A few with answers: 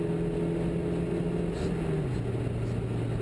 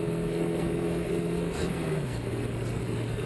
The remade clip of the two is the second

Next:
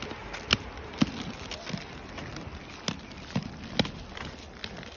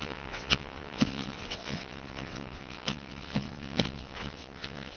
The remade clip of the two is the second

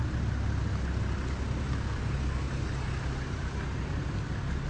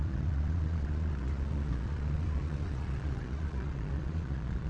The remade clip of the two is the second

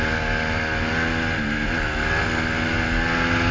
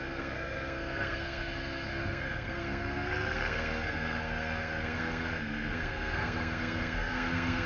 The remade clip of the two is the second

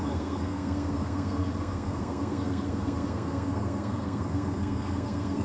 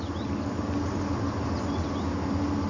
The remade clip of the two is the first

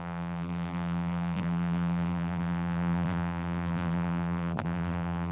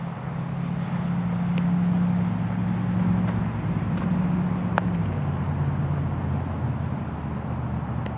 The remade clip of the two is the first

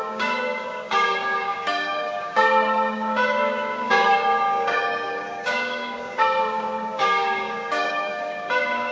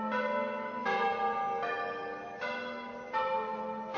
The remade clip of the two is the first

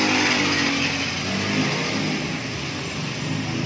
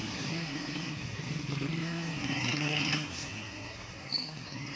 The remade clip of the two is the second